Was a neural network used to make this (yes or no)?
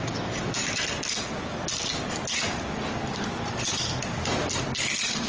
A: no